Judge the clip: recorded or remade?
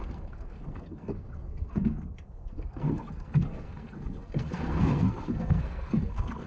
remade